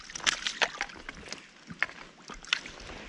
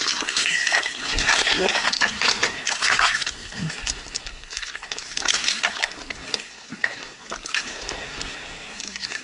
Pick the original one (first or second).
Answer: first